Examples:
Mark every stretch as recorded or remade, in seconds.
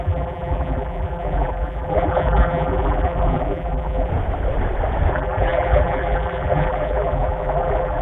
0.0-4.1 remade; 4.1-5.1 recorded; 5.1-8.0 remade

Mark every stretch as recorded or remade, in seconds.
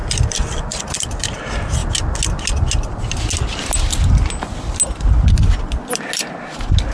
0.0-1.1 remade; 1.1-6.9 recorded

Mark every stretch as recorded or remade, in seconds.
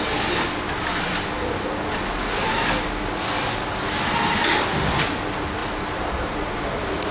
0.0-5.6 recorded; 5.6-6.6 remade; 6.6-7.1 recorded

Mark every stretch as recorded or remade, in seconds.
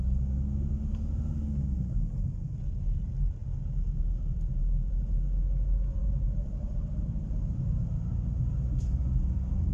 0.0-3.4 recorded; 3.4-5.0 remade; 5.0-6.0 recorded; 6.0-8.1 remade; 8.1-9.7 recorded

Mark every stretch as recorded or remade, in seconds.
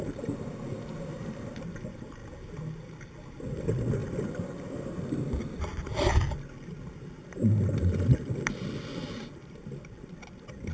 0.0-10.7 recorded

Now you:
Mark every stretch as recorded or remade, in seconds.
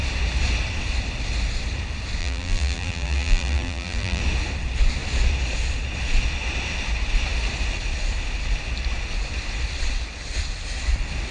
0.0-2.2 recorded; 2.2-4.2 remade; 4.2-11.3 recorded